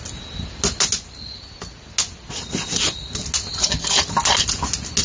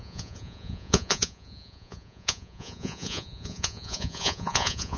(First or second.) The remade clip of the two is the second